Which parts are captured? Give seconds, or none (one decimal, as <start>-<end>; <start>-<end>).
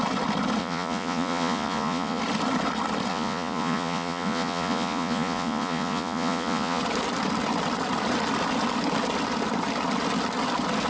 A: 0.0-0.6; 2.2-3.1; 6.8-10.9